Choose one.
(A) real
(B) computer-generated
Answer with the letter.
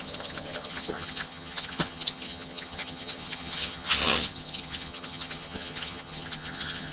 B